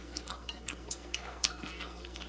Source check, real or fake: fake